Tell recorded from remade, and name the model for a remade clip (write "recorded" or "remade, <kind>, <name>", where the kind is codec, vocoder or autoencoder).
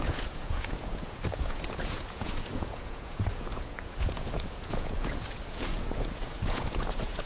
remade, vocoder, Vocos